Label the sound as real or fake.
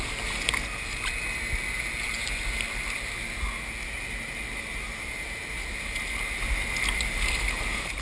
real